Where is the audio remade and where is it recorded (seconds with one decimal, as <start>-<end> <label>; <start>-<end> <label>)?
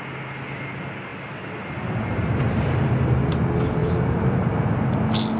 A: 0.0-1.1 recorded; 1.1-3.2 remade; 3.2-3.8 recorded; 3.8-4.5 remade; 4.5-5.4 recorded